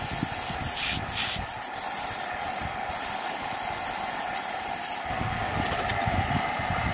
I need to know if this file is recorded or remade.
recorded